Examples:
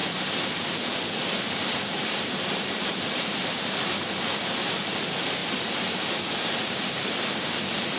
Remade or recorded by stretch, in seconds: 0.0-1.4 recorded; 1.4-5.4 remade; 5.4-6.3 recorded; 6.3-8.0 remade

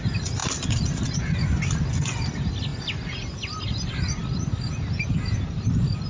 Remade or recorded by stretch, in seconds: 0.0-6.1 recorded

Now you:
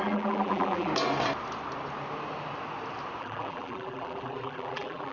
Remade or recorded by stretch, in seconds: 0.0-0.9 remade; 0.9-3.2 recorded; 3.2-5.1 remade

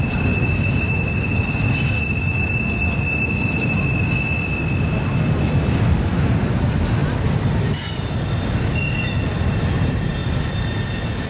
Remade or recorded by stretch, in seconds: 0.0-11.3 recorded

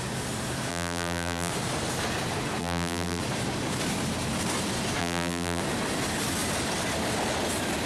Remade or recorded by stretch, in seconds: 0.0-0.7 recorded; 0.7-1.5 remade; 1.5-2.6 recorded; 2.6-3.2 remade; 3.2-5.0 recorded; 5.0-5.6 remade; 5.6-7.9 recorded

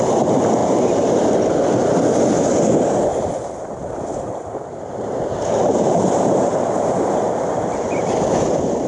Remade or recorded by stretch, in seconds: 0.0-0.6 recorded; 0.6-1.2 remade; 1.2-3.8 recorded; 3.8-8.5 remade; 8.5-8.9 recorded

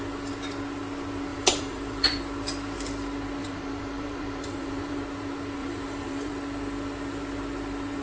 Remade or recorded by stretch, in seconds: 0.0-1.3 recorded; 1.3-2.2 remade; 2.2-3.4 recorded; 3.4-5.0 remade; 5.0-5.6 recorded; 5.6-6.3 remade; 6.3-8.0 recorded

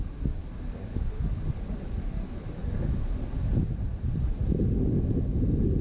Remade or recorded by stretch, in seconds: 0.0-5.8 recorded